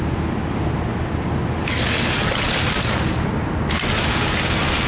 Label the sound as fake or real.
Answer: real